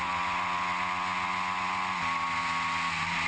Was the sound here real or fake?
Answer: real